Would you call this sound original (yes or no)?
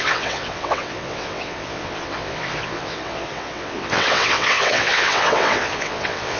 no